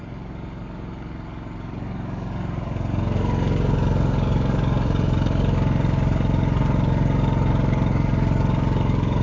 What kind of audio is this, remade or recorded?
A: remade